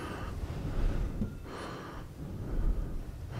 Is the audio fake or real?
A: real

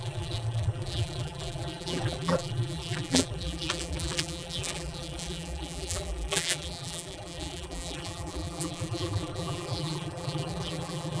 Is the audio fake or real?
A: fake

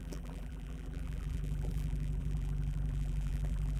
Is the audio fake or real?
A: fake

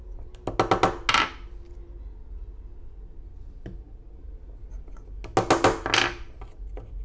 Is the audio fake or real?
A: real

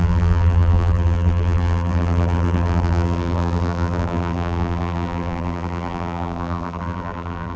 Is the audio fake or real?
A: fake